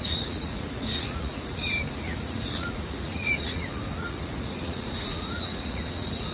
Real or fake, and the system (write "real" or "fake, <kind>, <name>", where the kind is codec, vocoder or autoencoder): fake, vocoder, Vocos